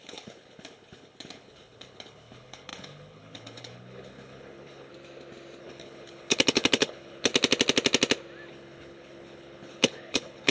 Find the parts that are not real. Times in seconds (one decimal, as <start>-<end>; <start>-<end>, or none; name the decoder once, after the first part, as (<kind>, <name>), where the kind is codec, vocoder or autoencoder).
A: 0.0-4.9 (codec, HILCodec); 5.6-7.3; 8.5-10.5